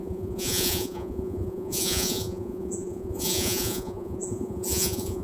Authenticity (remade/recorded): remade